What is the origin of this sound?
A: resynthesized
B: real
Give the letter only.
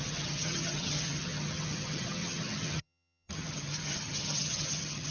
A